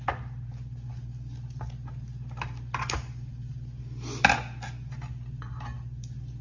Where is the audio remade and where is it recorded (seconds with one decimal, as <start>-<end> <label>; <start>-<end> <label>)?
0.0-6.4 recorded